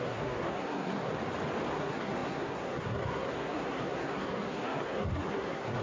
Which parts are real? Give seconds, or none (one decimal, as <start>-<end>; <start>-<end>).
1.1-1.7